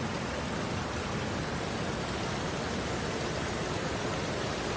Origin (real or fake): real